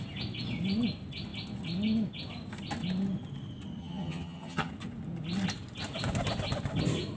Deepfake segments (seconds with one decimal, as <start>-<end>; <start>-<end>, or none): 3.8-4.7